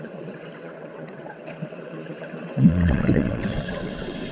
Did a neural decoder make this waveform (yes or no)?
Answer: yes